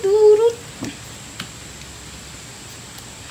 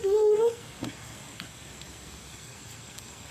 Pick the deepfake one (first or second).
second